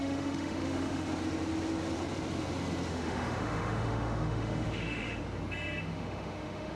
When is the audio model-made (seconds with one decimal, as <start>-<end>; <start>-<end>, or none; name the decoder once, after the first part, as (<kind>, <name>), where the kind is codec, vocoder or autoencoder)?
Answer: 0.0-1.1 (autoencoder, DAC-VAE); 2.9-5.2; 5.8-6.8